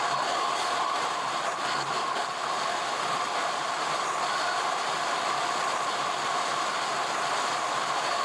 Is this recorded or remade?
recorded